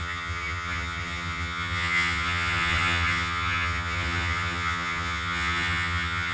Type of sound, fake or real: fake